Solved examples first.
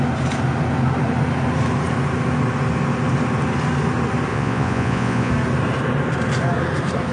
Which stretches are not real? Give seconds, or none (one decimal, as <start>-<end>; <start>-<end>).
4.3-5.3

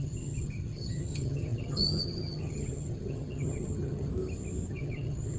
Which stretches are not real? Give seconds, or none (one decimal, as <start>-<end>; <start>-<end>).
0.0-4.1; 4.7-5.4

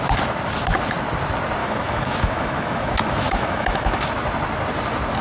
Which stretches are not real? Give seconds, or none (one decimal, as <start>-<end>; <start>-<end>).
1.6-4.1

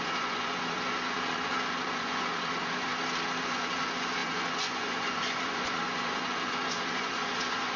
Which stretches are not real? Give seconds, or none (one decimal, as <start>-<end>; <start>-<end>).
0.0-2.9; 3.4-7.8

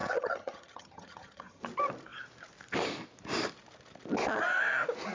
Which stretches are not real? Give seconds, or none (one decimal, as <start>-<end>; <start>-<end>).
0.0-1.6

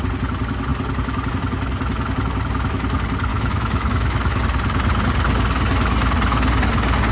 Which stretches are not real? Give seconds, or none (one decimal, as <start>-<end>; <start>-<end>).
3.3-4.4